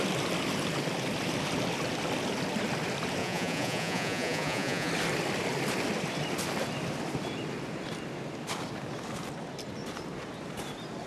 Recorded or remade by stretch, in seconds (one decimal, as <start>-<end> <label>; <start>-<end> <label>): 0.0-3.2 recorded; 3.2-4.9 remade; 4.9-11.1 recorded